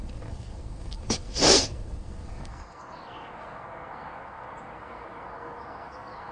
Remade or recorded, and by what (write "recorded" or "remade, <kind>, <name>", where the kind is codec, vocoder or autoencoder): remade, codec, SNAC